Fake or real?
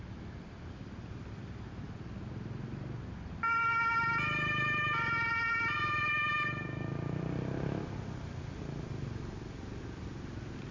real